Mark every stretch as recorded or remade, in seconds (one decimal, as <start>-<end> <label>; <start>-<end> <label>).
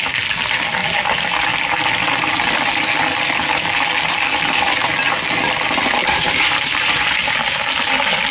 0.0-6.0 recorded; 6.0-7.3 remade; 7.3-8.3 recorded